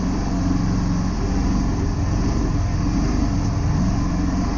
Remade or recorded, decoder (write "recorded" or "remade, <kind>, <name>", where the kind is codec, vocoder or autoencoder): recorded